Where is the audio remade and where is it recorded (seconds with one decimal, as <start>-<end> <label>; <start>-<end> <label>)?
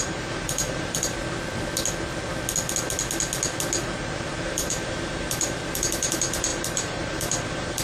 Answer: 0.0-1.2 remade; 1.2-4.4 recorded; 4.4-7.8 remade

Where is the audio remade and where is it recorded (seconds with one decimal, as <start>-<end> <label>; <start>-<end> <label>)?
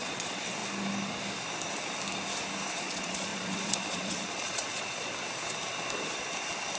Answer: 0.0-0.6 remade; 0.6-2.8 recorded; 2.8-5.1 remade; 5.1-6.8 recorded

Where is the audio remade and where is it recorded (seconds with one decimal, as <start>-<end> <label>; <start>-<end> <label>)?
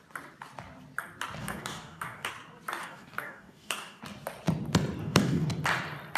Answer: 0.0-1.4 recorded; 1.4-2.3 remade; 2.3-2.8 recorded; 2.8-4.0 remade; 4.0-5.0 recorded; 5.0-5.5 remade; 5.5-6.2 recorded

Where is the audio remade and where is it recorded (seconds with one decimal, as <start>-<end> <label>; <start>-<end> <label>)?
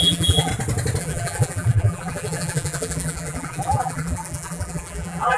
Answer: 0.0-0.5 remade; 0.5-1.0 recorded; 1.0-5.4 remade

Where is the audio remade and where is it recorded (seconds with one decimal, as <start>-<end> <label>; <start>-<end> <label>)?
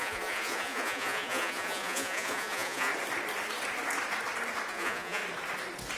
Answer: 0.0-2.9 remade; 2.9-4.7 recorded; 4.7-5.2 remade; 5.2-6.0 recorded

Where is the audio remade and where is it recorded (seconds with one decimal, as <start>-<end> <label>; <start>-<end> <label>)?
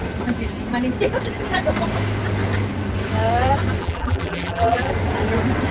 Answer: 0.0-3.8 recorded; 3.8-4.9 remade; 4.9-5.7 recorded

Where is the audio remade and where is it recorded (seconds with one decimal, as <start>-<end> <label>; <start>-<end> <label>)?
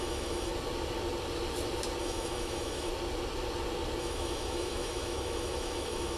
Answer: 0.0-0.5 remade; 0.5-2.0 recorded; 2.0-2.9 remade; 2.9-4.0 recorded; 4.0-6.2 remade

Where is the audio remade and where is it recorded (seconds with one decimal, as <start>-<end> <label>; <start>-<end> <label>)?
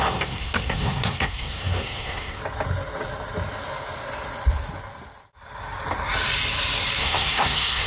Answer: 0.0-2.4 remade; 2.4-7.0 recorded; 7.0-7.9 remade